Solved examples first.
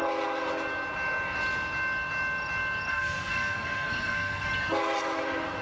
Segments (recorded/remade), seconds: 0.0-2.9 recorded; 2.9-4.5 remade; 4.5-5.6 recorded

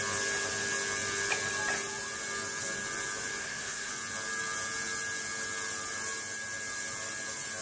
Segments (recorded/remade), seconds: 0.0-3.4 recorded; 3.4-3.9 remade; 3.9-7.6 recorded

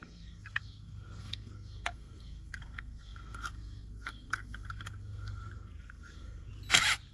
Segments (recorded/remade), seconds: 0.0-6.5 remade; 6.5-7.1 recorded